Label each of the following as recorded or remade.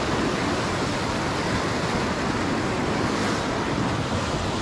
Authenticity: recorded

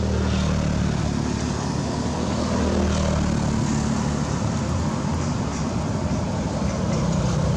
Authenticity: recorded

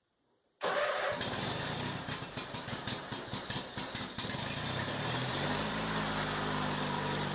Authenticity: remade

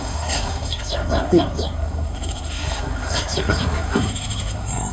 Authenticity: remade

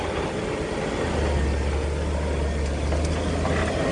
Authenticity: recorded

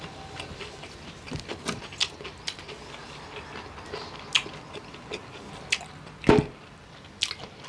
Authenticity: recorded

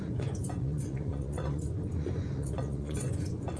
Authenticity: remade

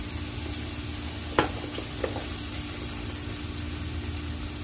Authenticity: recorded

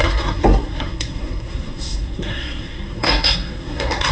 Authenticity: remade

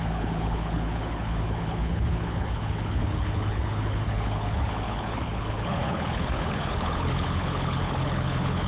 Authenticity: remade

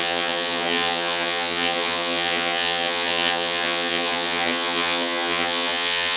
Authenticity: remade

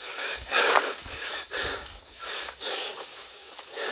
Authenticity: remade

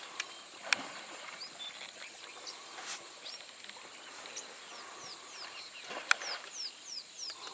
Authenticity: recorded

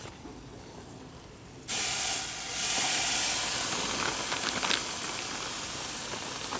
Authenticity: recorded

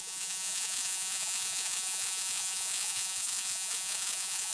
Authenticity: remade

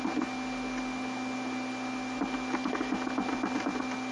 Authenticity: recorded